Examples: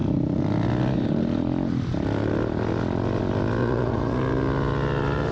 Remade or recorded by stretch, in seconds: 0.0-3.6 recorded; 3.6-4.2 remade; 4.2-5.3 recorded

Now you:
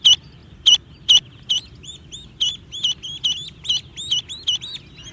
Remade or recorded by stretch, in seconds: 0.0-0.4 recorded; 0.4-2.1 remade; 2.1-5.1 recorded

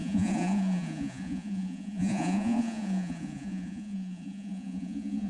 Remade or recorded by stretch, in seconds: 0.0-5.3 remade

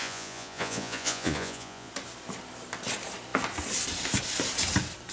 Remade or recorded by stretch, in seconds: 0.0-1.9 remade; 1.9-5.1 recorded

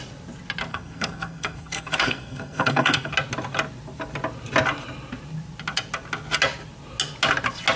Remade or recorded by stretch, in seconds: 0.0-0.7 recorded; 0.7-3.1 remade; 3.1-7.8 recorded